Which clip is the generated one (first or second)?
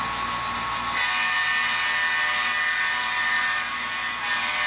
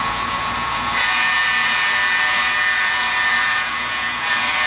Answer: second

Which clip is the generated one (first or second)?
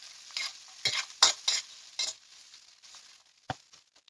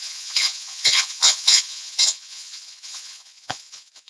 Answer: second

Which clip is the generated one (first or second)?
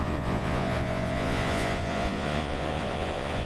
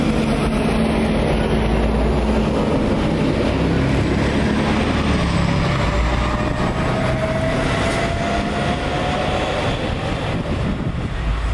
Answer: first